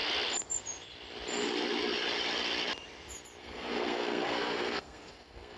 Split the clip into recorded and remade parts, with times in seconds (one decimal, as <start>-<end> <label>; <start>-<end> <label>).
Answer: 0.0-3.4 recorded; 3.4-5.6 remade